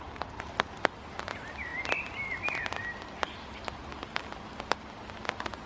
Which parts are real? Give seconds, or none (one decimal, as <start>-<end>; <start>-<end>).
0.0-5.7